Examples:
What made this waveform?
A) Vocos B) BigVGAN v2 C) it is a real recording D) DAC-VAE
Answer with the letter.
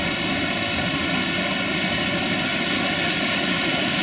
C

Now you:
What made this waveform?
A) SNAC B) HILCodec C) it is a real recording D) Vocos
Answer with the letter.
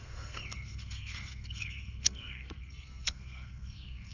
A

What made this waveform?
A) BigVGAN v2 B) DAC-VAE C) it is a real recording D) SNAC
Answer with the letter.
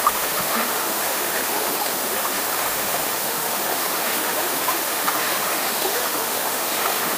B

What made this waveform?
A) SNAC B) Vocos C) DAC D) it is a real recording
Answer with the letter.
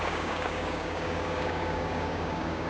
C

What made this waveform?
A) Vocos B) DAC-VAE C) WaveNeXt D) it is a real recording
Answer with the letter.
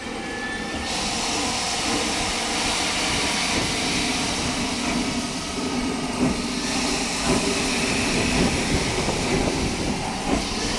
D